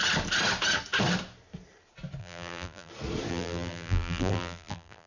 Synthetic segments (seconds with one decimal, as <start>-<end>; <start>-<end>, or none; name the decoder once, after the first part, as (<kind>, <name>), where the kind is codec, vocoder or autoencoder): 2.2-2.9 (vocoder, BigVGAN v2); 3.3-5.1